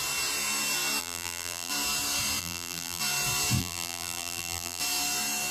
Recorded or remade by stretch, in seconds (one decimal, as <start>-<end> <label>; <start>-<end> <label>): 0.0-1.0 recorded; 1.0-1.7 remade; 1.7-2.4 recorded; 2.4-3.0 remade; 3.0-3.6 recorded; 3.6-4.8 remade; 4.8-5.5 recorded